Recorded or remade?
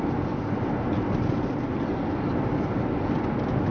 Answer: recorded